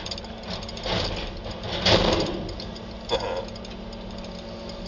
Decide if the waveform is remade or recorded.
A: recorded